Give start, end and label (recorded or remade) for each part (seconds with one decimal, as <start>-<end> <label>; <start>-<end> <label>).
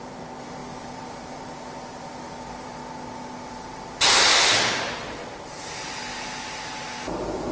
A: 0.0-2.8 remade; 2.8-3.4 recorded; 3.4-7.5 remade